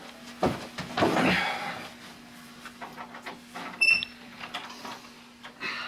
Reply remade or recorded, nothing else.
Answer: recorded